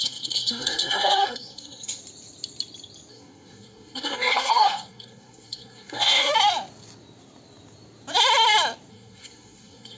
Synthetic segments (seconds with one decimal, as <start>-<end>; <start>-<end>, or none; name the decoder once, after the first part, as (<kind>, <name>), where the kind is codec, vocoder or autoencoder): 0.0-2.0 (codec, SNAC); 3.1-6.3; 8.9-10.0